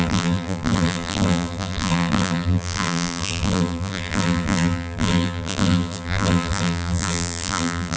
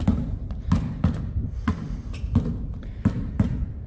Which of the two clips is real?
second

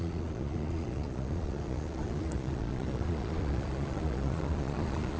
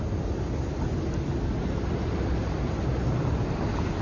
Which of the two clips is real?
second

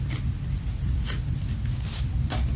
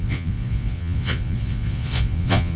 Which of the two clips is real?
first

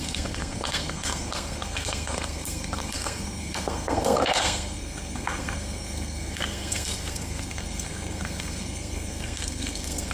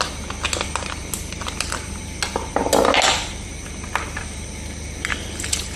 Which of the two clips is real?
second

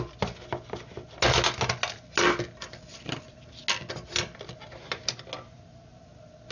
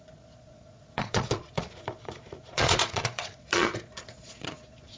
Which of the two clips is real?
first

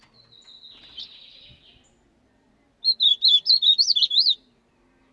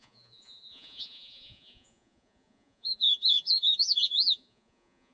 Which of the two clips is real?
first